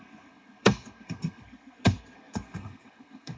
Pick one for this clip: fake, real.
fake